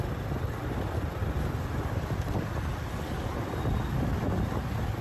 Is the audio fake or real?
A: real